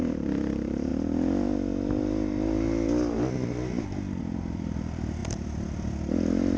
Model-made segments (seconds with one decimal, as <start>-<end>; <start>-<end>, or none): 0.0-0.9; 4.2-6.6